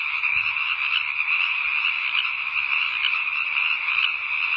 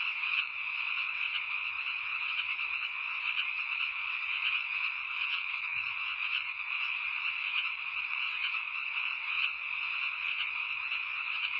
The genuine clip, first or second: first